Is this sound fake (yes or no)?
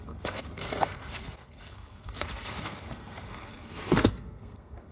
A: yes